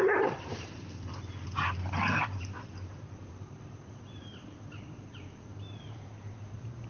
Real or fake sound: fake